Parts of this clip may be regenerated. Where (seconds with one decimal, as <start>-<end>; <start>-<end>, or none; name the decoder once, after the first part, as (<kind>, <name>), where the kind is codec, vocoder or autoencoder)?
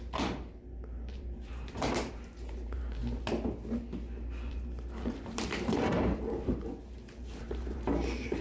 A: 0.0-3.0 (vocoder, BigVGAN v2); 4.5-8.4